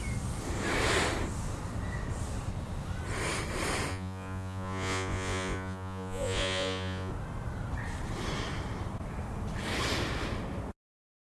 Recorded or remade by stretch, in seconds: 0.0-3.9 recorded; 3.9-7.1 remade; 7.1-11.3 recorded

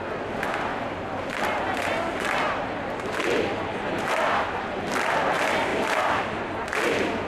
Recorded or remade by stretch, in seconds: 0.0-0.7 recorded; 0.7-5.1 remade; 5.1-5.7 recorded; 5.7-6.6 remade; 6.6-7.3 recorded

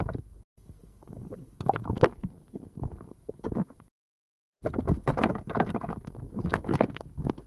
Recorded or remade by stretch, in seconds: 0.0-7.5 remade

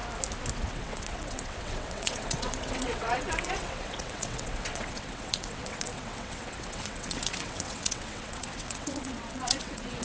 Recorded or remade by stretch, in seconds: 0.0-0.5 recorded; 0.5-10.0 remade

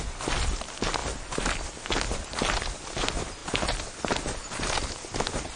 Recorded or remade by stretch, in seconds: 0.0-5.6 recorded